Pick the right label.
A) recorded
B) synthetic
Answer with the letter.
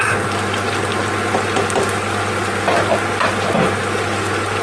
A